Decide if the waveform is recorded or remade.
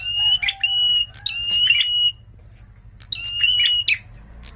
recorded